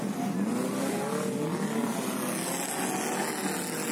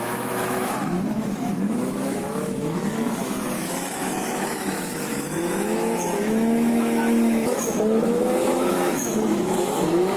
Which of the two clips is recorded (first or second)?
first